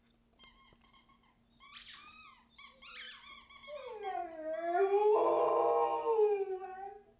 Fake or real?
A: real